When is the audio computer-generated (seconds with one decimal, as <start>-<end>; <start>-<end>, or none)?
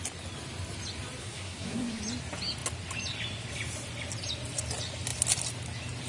1.2-2.0